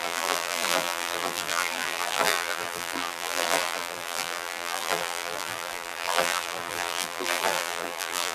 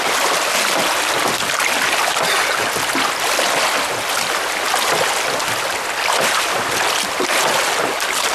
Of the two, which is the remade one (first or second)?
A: first